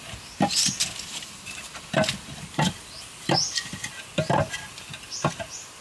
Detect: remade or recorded recorded